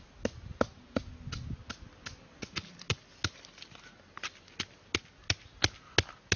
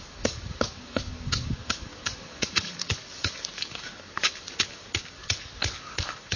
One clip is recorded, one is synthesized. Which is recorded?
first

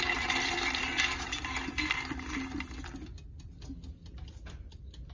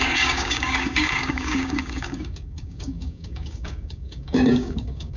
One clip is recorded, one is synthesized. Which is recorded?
first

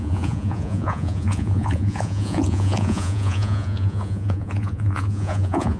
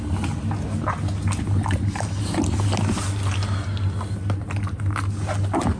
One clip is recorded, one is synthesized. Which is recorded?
second